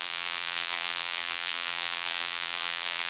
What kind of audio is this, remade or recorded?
remade